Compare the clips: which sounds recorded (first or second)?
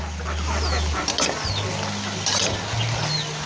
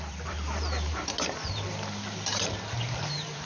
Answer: first